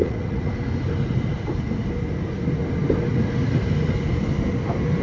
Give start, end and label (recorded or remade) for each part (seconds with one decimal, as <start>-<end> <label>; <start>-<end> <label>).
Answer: 0.0-0.5 remade; 0.5-5.0 recorded